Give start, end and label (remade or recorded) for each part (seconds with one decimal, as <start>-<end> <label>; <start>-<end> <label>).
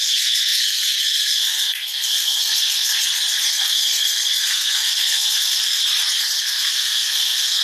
0.0-2.9 remade; 2.9-3.5 recorded; 3.5-5.8 remade; 5.8-6.4 recorded; 6.4-7.6 remade